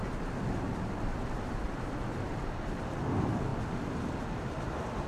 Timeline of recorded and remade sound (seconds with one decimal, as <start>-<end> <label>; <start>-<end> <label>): 0.0-5.1 recorded